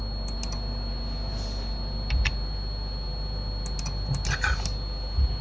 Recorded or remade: recorded